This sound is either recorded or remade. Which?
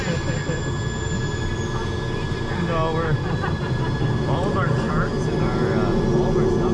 recorded